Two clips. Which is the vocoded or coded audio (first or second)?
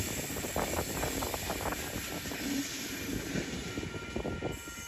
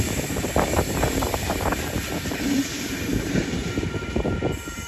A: second